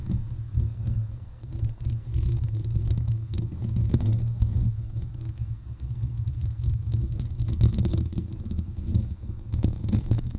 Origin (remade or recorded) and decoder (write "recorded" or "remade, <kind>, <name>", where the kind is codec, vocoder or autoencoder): remade, codec, SNAC